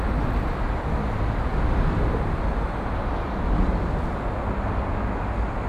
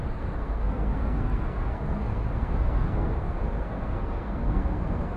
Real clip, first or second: first